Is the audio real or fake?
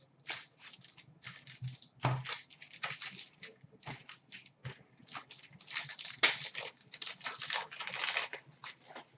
real